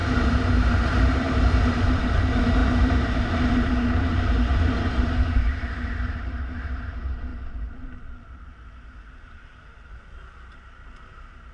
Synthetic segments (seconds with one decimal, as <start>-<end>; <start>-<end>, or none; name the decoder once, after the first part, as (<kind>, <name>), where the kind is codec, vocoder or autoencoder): 0.0-11.5 (vocoder, BigVGAN v2)